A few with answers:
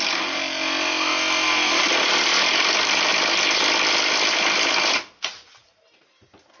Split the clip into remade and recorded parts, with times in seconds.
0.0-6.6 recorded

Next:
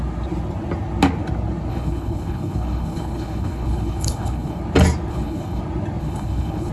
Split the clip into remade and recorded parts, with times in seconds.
0.0-1.7 recorded; 1.7-4.6 remade; 4.6-5.1 recorded; 5.1-5.6 remade; 5.6-6.0 recorded; 6.0-6.7 remade

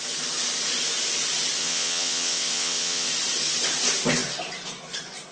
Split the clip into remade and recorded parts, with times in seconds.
0.0-1.6 recorded; 1.6-3.1 remade; 3.1-5.3 recorded

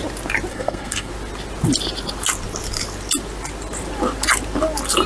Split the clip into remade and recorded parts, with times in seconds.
0.0-0.5 recorded; 0.5-1.1 remade; 1.1-5.1 recorded

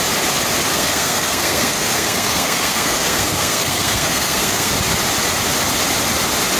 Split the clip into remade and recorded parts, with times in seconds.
0.0-0.7 recorded; 0.7-4.7 remade; 4.7-6.6 recorded